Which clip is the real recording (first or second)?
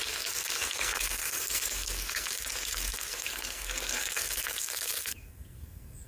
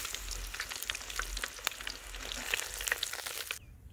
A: second